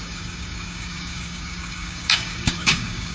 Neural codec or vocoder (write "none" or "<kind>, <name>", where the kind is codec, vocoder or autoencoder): codec, DAC